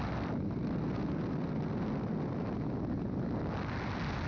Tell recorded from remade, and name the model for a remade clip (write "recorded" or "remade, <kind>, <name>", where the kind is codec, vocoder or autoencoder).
recorded